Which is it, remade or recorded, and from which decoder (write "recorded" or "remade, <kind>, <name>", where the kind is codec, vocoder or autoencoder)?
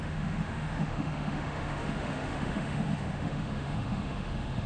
remade, autoencoder, DAC-VAE